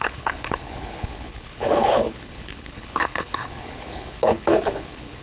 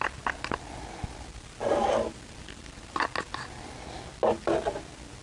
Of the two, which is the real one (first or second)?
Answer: second